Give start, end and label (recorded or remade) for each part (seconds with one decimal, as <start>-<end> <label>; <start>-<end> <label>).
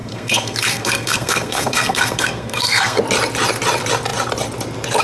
0.0-3.0 remade; 3.0-5.0 recorded